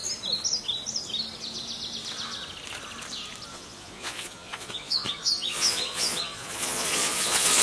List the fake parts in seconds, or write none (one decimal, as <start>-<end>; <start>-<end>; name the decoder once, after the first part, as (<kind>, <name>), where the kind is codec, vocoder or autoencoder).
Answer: 3.5-7.6 (vocoder, Vocos)